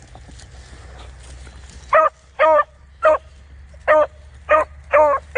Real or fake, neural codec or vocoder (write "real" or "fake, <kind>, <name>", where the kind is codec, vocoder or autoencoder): real